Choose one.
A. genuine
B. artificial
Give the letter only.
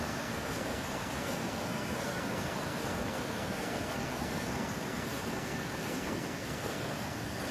B